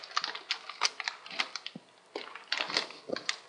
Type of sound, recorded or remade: recorded